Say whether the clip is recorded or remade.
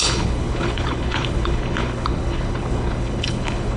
remade